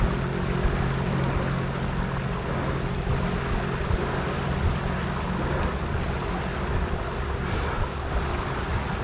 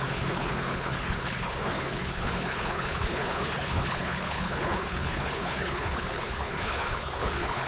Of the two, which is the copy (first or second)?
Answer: second